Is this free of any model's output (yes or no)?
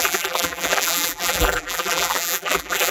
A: no